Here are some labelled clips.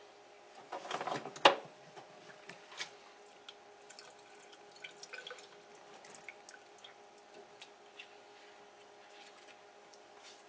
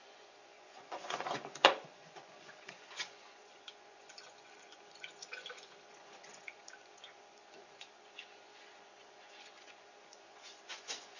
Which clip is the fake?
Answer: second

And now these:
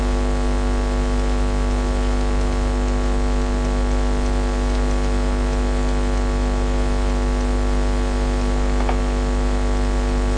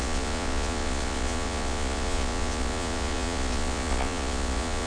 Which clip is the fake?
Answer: second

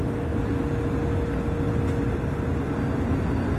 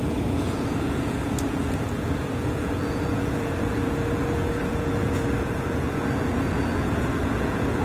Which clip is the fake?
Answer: second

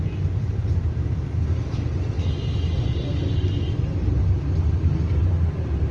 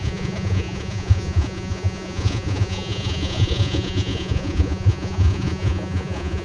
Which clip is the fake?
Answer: second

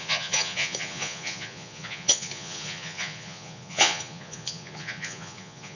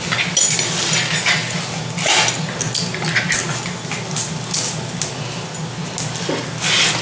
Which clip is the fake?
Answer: first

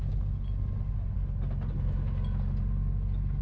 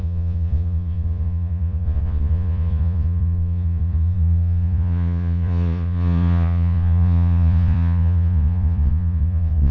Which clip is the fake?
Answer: second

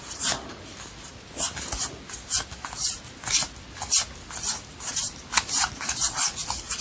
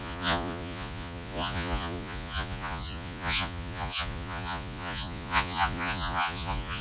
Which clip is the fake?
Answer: second